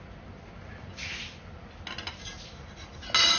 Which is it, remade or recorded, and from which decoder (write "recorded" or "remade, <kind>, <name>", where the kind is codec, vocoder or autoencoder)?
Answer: recorded